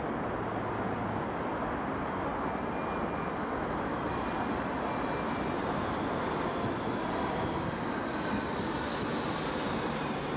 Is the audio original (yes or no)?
yes